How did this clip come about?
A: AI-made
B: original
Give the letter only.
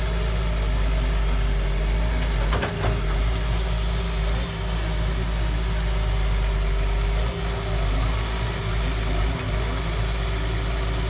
B